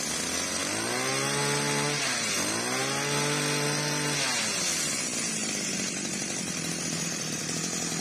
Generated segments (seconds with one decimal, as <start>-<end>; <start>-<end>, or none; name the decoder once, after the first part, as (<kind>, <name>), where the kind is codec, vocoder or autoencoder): 5.4-7.4 (vocoder, BigVGAN v2)